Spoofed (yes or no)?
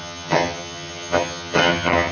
yes